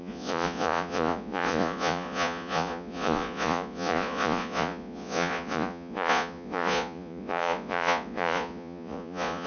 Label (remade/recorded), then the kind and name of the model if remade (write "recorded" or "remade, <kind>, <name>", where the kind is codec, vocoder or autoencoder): remade, vocoder, Vocos